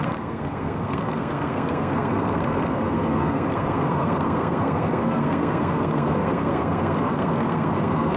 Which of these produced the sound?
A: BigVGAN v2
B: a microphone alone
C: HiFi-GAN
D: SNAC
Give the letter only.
D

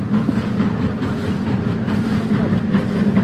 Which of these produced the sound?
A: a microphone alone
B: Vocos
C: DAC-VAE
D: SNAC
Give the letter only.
A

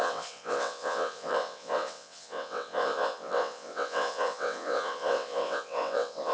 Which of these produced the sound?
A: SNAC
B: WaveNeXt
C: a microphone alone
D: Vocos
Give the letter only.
B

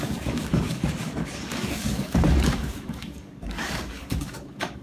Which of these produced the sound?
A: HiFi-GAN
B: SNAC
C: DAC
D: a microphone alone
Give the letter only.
C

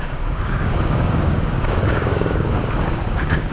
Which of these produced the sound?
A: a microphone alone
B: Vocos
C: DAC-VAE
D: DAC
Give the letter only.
D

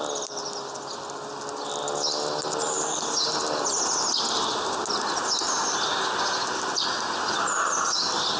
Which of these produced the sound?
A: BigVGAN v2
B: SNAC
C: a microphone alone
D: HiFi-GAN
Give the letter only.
C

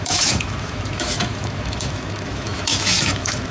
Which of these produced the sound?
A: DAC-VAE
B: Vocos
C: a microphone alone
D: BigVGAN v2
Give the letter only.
A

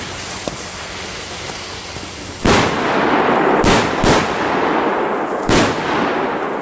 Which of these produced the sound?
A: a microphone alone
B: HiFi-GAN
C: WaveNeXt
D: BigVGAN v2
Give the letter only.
A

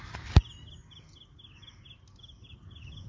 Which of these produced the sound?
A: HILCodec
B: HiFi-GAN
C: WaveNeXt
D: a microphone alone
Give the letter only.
D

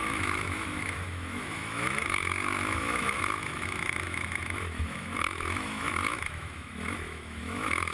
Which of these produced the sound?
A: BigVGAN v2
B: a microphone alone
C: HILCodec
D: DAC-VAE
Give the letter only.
D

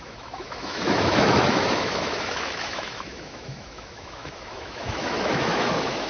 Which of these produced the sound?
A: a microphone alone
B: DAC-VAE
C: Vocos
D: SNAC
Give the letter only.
B